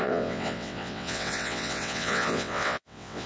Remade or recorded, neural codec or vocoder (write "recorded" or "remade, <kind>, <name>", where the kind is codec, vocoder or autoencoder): remade, vocoder, WaveNeXt